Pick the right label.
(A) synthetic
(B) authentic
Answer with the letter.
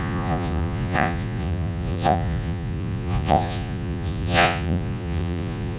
A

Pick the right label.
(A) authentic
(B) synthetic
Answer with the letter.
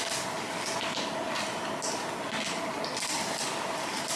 A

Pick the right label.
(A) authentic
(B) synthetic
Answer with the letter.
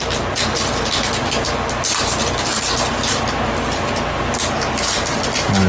B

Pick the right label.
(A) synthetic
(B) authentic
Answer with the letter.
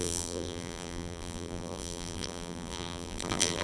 A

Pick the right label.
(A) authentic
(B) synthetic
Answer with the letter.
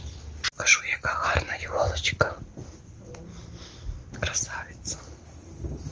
A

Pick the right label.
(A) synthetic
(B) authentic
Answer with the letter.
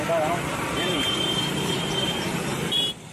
A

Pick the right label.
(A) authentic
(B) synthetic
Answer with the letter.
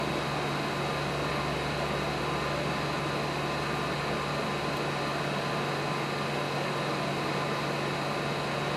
A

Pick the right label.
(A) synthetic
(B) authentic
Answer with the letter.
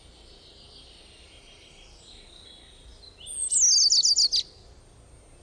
B